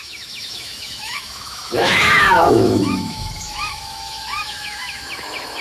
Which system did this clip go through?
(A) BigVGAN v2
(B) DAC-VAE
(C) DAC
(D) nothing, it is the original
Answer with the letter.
B